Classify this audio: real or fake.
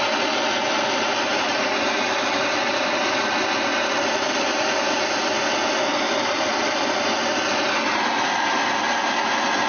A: real